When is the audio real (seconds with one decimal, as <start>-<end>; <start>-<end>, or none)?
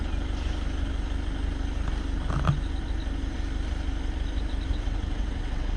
0.0-4.7